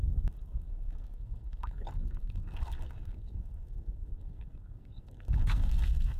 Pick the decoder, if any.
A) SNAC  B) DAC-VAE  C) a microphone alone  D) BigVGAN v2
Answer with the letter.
A